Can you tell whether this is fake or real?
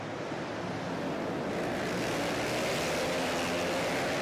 real